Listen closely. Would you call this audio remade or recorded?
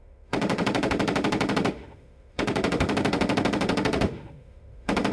remade